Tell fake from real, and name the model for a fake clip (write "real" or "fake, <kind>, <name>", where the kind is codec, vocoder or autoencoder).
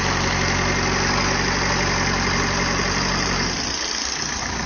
real